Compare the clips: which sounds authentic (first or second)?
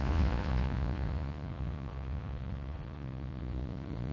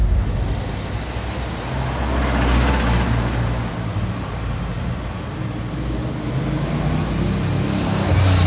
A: second